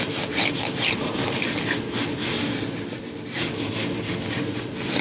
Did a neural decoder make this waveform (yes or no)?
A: no